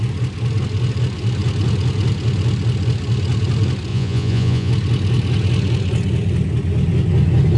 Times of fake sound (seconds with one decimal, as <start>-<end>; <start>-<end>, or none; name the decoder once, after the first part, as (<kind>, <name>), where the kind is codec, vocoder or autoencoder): 3.9-4.7 (vocoder, Vocos)